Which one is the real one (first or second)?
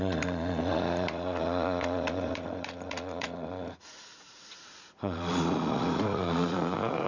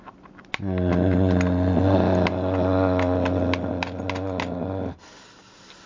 second